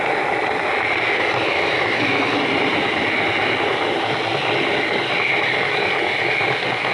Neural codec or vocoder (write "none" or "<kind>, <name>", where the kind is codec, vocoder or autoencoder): none